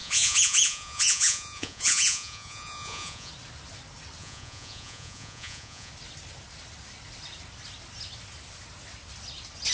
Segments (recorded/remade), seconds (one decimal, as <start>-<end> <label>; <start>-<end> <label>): 0.0-3.3 remade; 3.3-4.2 recorded; 4.2-5.9 remade; 5.9-9.7 recorded

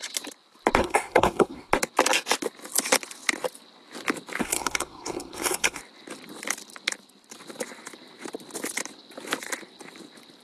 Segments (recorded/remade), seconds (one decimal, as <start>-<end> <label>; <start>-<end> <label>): 0.0-0.8 recorded; 0.8-1.7 remade; 1.7-4.4 recorded; 4.4-5.8 remade; 5.8-10.4 recorded

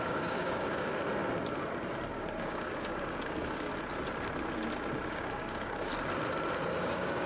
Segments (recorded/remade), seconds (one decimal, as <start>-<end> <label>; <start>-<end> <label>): 0.0-0.9 remade; 0.9-2.4 recorded; 2.4-3.7 remade; 3.7-5.1 recorded; 5.1-5.9 remade; 5.9-6.8 recorded; 6.8-7.3 remade

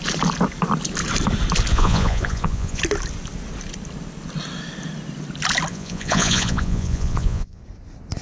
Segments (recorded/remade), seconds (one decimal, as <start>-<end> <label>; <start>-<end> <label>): 0.0-1.7 recorded; 1.7-2.8 remade; 2.8-5.7 recorded; 5.7-7.6 remade; 7.6-8.2 recorded

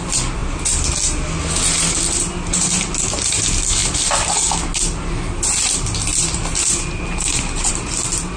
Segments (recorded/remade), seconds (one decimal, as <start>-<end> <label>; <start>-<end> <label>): 0.0-8.4 recorded